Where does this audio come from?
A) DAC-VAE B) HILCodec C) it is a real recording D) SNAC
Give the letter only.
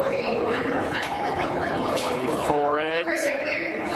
B